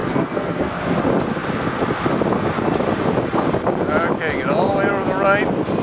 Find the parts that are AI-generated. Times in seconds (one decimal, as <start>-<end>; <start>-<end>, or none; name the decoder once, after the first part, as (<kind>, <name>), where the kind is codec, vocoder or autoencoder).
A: 0.0-0.7 (codec, SNAC)

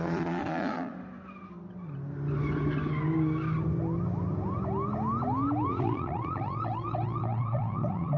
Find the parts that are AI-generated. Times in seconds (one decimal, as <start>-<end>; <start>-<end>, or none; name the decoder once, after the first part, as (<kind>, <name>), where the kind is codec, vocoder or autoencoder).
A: 0.0-0.9 (vocoder, Vocos); 5.8-8.2

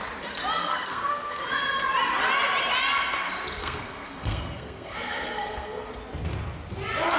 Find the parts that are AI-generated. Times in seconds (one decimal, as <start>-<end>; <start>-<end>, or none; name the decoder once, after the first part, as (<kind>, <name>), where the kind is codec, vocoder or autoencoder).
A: 0.6-1.4 (codec, SNAC); 3.6-6.0

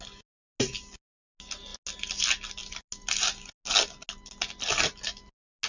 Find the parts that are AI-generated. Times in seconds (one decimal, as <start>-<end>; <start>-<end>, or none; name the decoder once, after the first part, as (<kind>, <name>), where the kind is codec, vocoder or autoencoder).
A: none